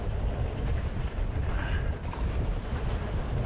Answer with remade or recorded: recorded